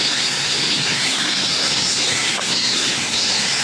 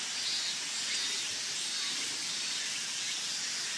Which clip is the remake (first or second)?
first